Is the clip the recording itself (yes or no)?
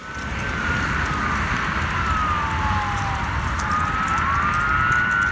yes